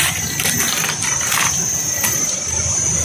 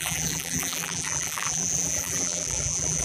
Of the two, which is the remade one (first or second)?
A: second